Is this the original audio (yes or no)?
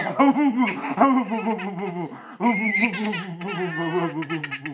yes